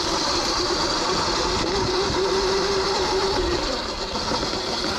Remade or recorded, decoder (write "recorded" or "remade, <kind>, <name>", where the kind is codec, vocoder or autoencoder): recorded